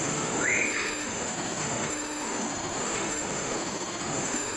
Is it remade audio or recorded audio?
remade